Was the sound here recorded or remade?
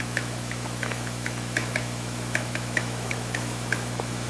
remade